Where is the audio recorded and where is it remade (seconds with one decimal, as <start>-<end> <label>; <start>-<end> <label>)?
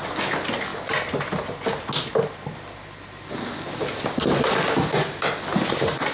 0.0-6.1 recorded